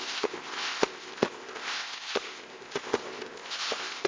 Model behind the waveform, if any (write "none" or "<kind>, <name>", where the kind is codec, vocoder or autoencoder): codec, ZipCodec